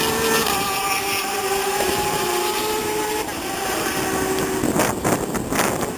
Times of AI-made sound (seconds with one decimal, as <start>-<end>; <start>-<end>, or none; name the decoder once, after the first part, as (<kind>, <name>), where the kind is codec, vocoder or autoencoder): 0.4-4.0 (vocoder, BigVGAN v2)